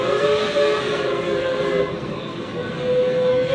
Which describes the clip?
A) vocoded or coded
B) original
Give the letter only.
A